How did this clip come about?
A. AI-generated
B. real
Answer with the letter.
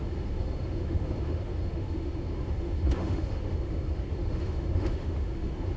A